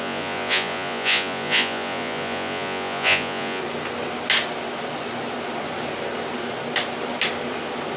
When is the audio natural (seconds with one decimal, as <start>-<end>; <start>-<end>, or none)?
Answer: 3.6-8.0